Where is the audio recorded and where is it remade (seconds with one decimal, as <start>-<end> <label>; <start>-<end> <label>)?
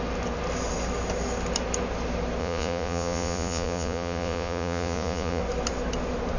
0.0-2.4 recorded; 2.4-5.4 remade; 5.4-6.4 recorded